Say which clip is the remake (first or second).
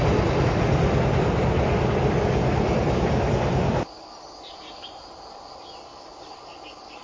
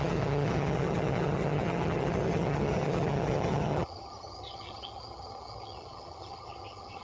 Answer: second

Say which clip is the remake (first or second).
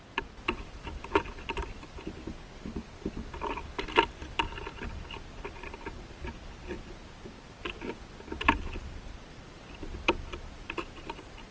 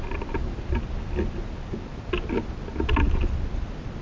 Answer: first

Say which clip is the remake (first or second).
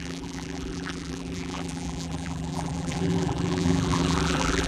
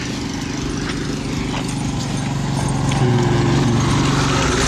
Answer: first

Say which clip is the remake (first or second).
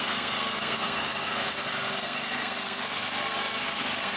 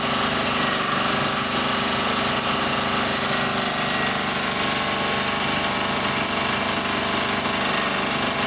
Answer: first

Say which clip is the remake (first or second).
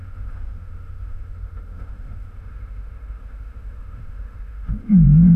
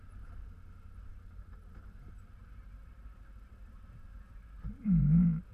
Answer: first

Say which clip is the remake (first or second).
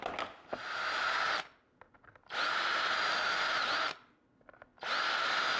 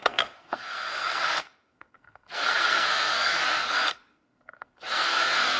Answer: second